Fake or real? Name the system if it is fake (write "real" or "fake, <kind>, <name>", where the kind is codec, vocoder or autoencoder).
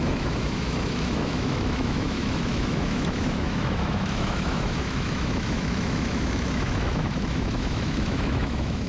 fake, autoencoder, DAC-VAE